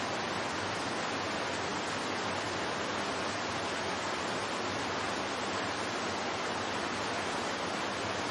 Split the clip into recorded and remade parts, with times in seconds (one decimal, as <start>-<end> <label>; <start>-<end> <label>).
0.0-8.3 recorded